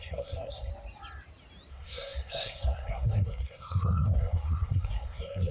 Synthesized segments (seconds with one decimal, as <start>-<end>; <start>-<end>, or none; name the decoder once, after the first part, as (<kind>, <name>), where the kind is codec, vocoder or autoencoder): 0.0-0.7 (codec, SNAC); 1.7-5.5